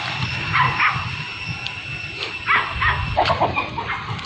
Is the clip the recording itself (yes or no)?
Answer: yes